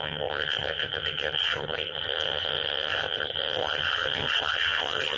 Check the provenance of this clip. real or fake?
fake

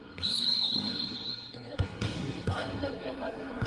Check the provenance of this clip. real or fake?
fake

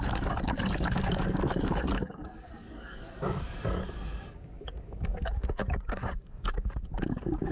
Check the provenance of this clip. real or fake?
fake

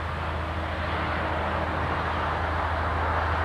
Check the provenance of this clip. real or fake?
real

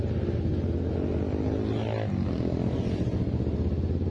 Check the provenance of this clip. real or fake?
real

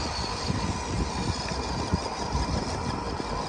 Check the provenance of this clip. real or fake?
real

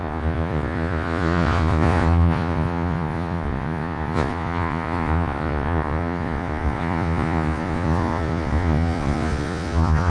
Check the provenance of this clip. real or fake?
fake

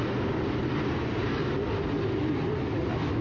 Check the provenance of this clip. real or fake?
real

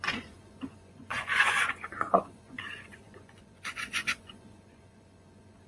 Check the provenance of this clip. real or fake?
fake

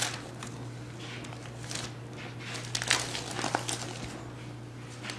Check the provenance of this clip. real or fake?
real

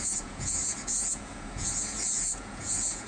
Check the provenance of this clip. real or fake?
fake